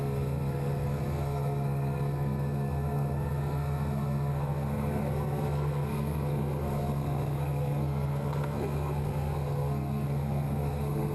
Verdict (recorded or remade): remade